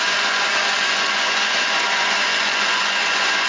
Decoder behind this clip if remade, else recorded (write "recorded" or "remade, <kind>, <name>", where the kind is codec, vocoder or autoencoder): remade, vocoder, Vocos